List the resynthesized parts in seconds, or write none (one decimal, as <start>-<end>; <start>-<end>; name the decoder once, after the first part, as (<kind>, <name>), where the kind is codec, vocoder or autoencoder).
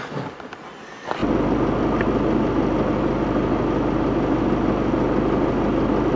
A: none